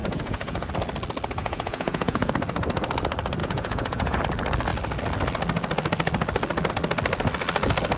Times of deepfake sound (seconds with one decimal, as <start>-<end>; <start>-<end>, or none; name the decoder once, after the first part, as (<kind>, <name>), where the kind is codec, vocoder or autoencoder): 0.0-0.7 (vocoder, Vocos); 1.4-2.3; 3.4-4.2